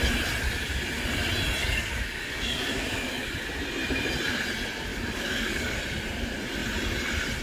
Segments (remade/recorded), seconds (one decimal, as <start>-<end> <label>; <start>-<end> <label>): 0.0-1.6 recorded; 1.6-3.5 remade; 3.5-4.9 recorded; 4.9-5.8 remade; 5.8-7.4 recorded